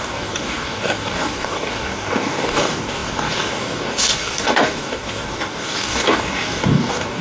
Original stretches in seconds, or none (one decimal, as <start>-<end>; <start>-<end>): none